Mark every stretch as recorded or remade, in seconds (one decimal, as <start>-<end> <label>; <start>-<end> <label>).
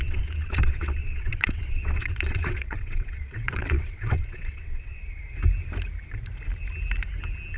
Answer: 0.0-5.2 remade; 5.2-7.6 recorded